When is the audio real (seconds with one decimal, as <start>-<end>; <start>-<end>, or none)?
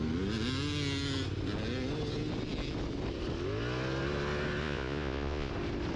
0.0-4.6; 5.5-6.0